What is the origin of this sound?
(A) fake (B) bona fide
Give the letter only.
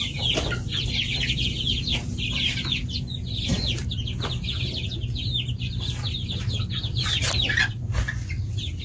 B